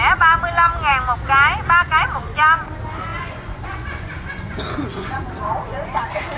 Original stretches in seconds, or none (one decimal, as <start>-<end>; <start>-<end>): 0.0-3.1; 6.0-6.4